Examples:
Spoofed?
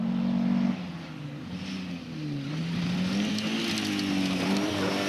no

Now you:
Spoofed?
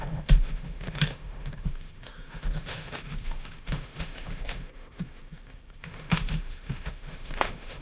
yes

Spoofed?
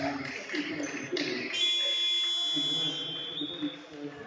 no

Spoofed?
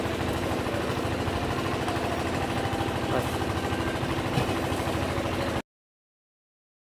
no